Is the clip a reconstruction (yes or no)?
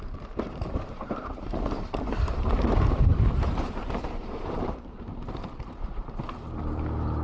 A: yes